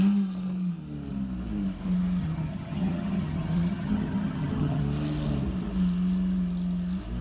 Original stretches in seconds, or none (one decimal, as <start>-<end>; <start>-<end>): 0.0-2.2; 4.8-7.2